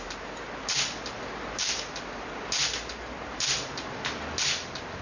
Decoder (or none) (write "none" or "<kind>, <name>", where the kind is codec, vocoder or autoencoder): none